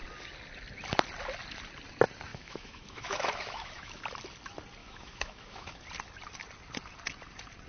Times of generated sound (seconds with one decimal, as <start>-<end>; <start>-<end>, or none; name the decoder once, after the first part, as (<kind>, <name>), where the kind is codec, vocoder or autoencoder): 2.3-4.0 (autoencoder, DAC-VAE); 4.8-5.8